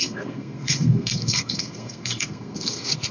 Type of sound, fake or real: fake